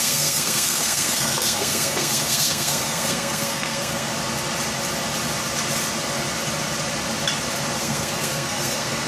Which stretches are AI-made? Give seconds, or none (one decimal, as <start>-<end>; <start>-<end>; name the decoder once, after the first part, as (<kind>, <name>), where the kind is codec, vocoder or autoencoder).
0.0-4.1 (codec, SNAC); 7.8-9.1